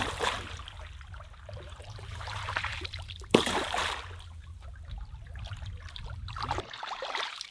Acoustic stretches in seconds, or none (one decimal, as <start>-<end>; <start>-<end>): 3.8-6.5